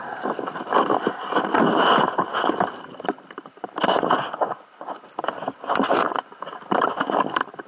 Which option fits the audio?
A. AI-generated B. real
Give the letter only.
B